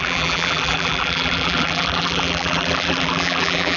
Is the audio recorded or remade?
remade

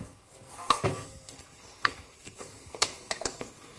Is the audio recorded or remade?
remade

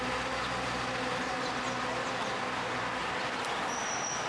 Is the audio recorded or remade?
recorded